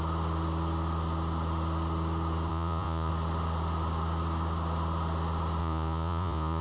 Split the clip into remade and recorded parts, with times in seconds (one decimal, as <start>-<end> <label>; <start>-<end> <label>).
0.0-2.5 recorded; 2.5-3.1 remade; 3.1-5.6 recorded; 5.6-6.6 remade